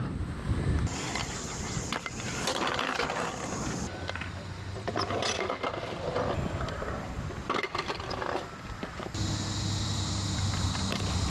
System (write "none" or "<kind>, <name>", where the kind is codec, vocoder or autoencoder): vocoder, BigVGAN v2